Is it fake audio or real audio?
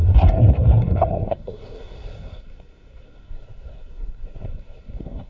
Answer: fake